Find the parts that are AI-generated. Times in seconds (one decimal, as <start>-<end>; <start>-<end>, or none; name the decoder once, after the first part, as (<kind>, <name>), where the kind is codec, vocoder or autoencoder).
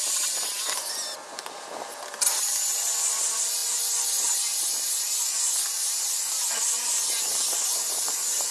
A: none